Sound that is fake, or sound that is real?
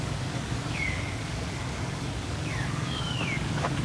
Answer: fake